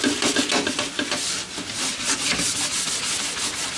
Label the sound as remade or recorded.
recorded